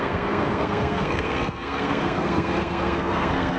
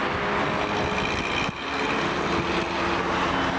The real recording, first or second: second